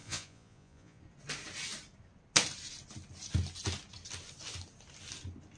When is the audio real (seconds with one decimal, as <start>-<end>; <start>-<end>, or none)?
1.0-5.6

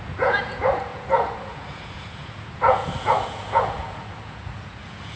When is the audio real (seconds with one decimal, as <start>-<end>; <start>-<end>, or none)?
none